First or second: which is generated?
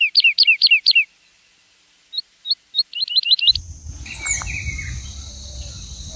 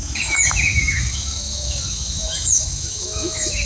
second